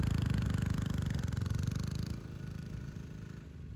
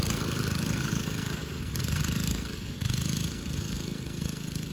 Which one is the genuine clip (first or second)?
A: first